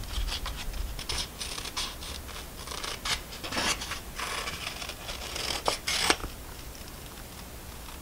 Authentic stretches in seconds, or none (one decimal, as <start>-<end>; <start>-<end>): 0.0-8.0